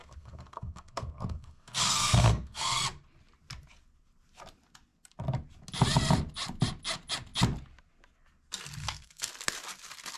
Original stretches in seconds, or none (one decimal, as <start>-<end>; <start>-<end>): 2.8-8.8; 9.3-10.2